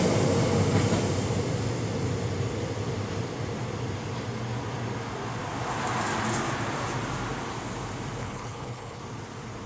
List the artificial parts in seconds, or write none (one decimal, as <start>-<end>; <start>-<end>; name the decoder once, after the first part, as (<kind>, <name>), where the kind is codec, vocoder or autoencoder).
8.2-9.0 (codec, HILCodec)